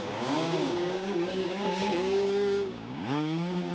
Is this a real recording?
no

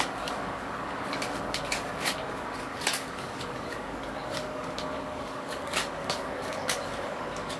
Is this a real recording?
no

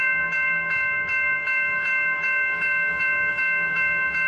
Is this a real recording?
no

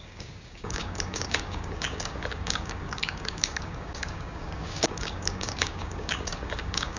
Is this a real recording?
no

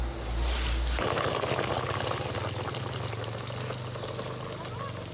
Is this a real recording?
yes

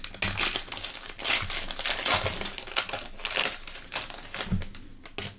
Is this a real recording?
yes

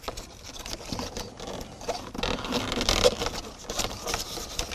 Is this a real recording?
yes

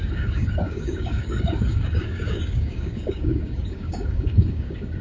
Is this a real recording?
no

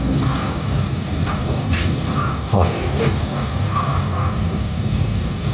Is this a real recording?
no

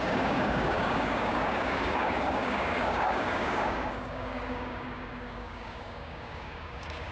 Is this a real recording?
no